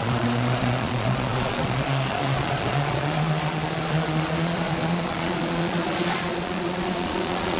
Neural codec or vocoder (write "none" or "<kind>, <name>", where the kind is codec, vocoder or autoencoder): vocoder, Vocos